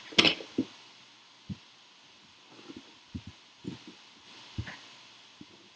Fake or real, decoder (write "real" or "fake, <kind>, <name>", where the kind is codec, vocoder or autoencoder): real